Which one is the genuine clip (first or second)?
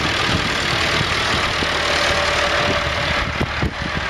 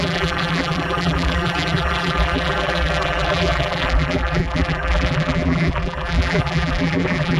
first